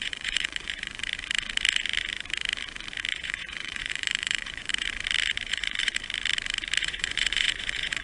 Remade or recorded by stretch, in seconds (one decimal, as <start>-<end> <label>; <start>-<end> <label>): 0.0-1.0 remade; 1.0-3.1 recorded; 3.1-4.7 remade; 4.7-5.5 recorded; 5.5-5.9 remade; 5.9-6.8 recorded; 6.8-8.0 remade